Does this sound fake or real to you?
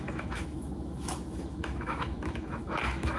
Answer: fake